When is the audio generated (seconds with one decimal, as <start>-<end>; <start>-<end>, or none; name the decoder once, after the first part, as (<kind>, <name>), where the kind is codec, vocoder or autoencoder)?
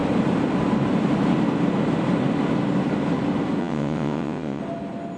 3.6-4.6 (vocoder, WaveNeXt)